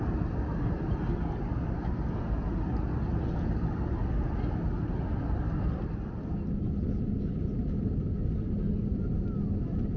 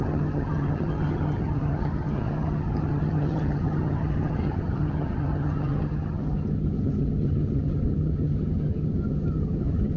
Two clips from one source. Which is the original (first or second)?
first